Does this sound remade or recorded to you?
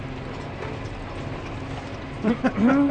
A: recorded